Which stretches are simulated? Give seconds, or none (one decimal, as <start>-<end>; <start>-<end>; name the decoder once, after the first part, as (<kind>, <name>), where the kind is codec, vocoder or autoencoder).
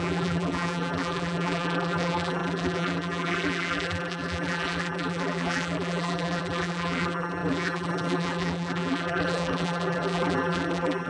0.0-11.1 (vocoder, BigVGAN v2)